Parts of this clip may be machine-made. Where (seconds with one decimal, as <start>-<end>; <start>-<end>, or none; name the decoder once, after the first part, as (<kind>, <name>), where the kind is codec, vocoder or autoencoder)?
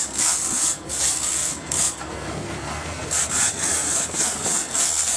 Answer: 0.0-5.2 (codec, SNAC)